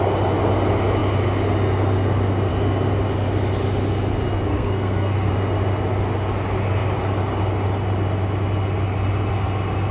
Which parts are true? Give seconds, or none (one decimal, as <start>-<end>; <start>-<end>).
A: 0.0-4.5; 5.3-9.9